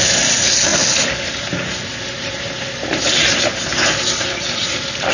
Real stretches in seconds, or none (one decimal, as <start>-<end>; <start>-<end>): 0.0-5.1